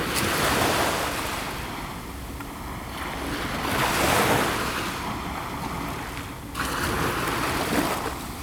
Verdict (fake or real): real